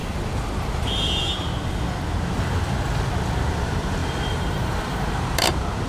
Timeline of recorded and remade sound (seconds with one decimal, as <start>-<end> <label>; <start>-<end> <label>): 0.0-3.5 recorded; 3.5-5.9 remade